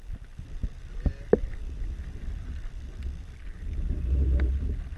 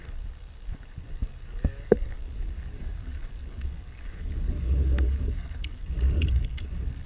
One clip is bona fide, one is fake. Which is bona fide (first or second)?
first